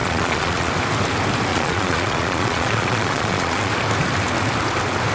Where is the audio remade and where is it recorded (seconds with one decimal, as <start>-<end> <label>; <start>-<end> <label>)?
0.0-0.7 remade; 0.7-1.5 recorded; 1.5-3.7 remade; 3.7-5.1 recorded